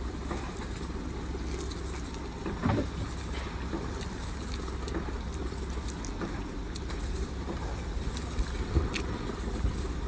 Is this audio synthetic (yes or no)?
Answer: no